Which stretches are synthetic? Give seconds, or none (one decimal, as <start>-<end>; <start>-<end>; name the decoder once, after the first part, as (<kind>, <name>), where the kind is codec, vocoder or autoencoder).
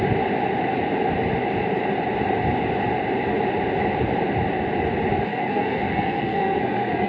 5.3-7.1 (codec, SNAC)